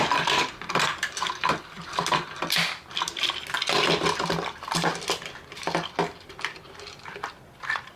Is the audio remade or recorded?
recorded